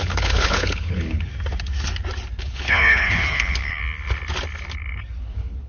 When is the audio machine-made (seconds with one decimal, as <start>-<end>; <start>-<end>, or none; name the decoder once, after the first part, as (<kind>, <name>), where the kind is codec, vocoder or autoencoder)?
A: 0.0-1.3 (codec, HILCodec); 2.4-3.8; 5.2-5.7